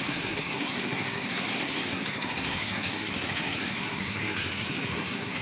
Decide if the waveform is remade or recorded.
remade